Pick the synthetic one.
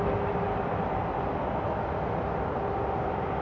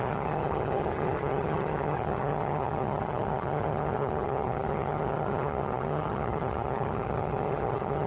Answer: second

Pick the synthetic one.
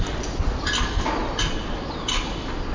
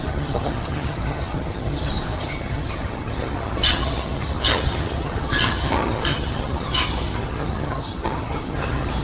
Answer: second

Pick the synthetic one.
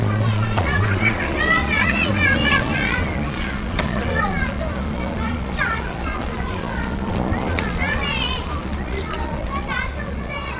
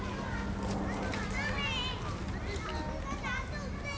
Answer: first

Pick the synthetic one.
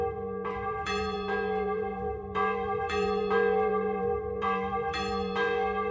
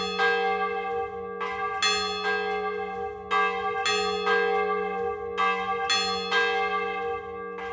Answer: first